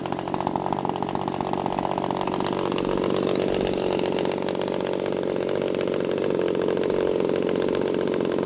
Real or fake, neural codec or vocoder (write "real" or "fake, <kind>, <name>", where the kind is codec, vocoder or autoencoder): real